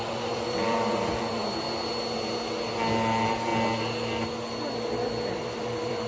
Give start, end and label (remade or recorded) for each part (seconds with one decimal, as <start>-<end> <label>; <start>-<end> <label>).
0.0-1.4 remade; 1.4-2.9 recorded; 2.9-3.5 remade; 3.5-5.2 recorded; 5.2-6.1 remade